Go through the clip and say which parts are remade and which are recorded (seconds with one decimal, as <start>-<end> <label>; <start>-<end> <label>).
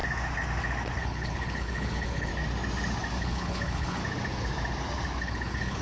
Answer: 0.0-1.0 recorded; 1.0-2.3 remade; 2.3-3.2 recorded; 3.2-4.0 remade; 4.0-5.2 recorded; 5.2-5.8 remade